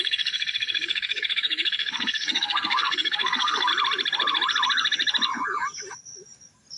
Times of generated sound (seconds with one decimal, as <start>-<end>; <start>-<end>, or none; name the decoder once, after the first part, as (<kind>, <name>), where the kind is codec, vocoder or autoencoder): 0.0-3.7 (codec, SNAC)